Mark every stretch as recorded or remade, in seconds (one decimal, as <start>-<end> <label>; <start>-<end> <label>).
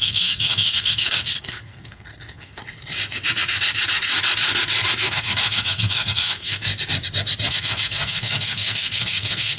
0.0-2.6 remade; 2.6-5.0 recorded; 5.0-6.7 remade; 6.7-7.5 recorded; 7.5-9.6 remade